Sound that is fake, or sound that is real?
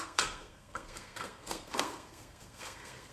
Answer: fake